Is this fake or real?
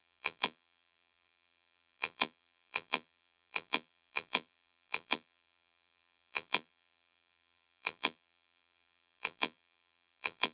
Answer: fake